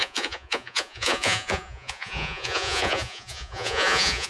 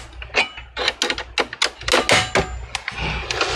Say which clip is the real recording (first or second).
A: second